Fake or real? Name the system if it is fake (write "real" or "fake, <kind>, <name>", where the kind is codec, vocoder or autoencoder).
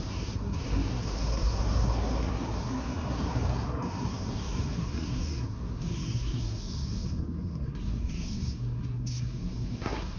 fake, codec, SNAC